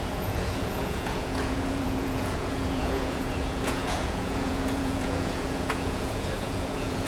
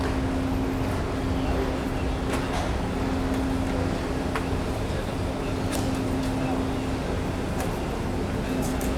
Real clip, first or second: second